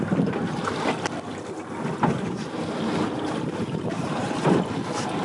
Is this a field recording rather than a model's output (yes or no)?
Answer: yes